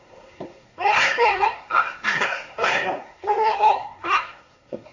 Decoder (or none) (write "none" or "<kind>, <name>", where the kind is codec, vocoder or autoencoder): codec, SNAC